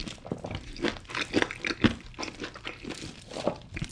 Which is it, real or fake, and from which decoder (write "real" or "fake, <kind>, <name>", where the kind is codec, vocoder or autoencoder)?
real